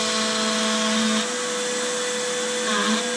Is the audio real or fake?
real